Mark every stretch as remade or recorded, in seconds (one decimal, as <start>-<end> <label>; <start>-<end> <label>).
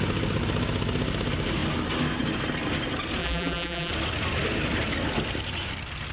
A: 0.0-3.2 recorded; 3.2-3.9 remade; 3.9-6.1 recorded